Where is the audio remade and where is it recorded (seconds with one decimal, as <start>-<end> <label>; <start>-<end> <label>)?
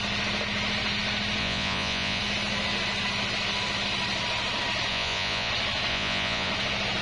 0.0-1.4 recorded; 1.4-2.2 remade; 2.2-4.9 recorded; 4.9-5.5 remade; 5.5-5.9 recorded; 5.9-6.5 remade; 6.5-7.0 recorded